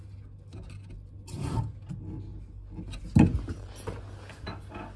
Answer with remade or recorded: recorded